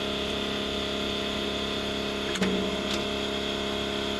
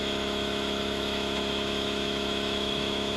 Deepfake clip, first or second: second